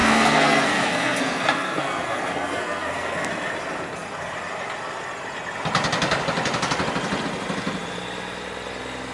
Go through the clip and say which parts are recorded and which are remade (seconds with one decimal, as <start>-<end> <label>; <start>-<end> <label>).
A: 0.0-3.3 remade; 3.3-9.1 recorded